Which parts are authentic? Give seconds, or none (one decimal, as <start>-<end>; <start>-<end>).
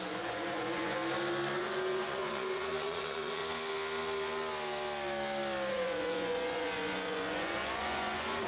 1.0-1.6; 3.4-5.7